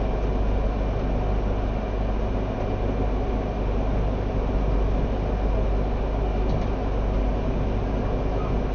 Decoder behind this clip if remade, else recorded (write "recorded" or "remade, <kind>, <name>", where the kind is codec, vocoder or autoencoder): recorded